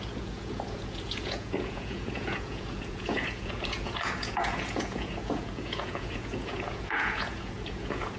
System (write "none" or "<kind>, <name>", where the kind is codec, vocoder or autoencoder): vocoder, Vocos